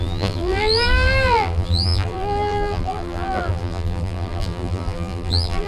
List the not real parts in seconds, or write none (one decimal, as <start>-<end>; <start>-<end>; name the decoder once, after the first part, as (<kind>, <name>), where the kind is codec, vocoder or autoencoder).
0.0-5.7 (vocoder, BigVGAN v2)